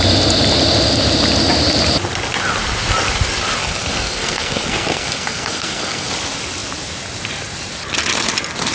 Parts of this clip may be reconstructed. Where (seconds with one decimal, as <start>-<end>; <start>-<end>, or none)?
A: 3.6-6.1